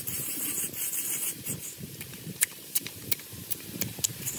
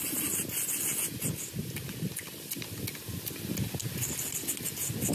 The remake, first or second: first